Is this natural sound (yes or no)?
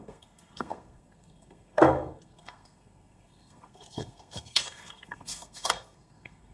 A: no